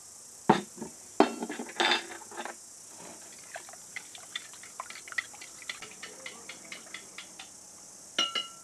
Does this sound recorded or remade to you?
recorded